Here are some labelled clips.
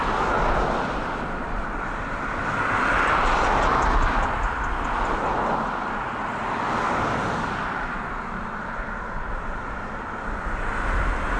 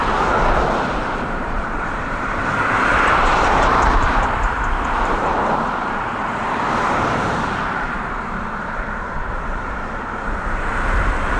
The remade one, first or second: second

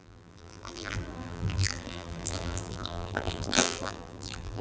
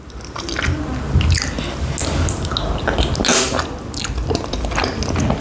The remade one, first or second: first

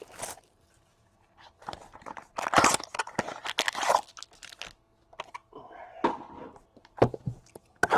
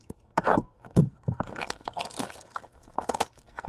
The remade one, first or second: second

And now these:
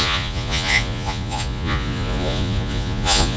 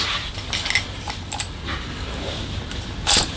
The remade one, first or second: first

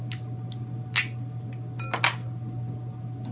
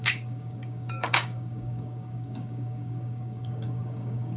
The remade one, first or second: second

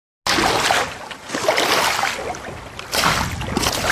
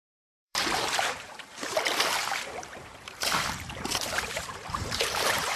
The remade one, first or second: second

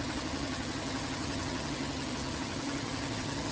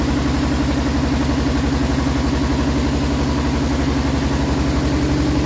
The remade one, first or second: first